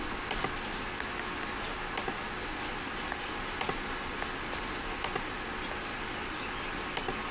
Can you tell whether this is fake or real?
real